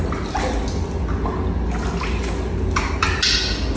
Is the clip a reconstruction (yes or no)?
no